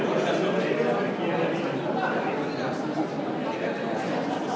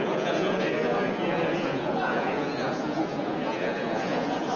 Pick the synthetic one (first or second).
second